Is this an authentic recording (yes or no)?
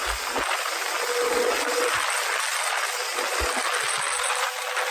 yes